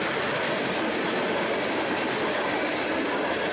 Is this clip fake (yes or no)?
no